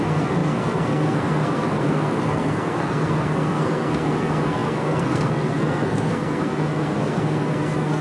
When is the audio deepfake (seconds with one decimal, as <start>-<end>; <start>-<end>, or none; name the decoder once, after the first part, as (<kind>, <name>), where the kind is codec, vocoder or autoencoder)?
0.0-8.0 (codec, SNAC)